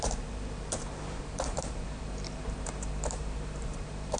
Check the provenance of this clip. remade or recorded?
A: remade